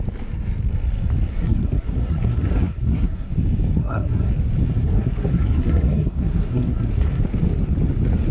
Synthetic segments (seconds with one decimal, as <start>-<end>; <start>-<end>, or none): 1.3-3.3; 3.8-4.3; 4.7-7.2